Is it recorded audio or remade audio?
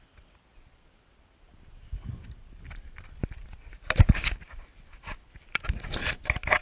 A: recorded